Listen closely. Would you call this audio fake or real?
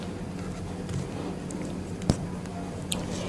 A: real